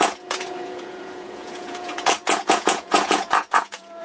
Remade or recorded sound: remade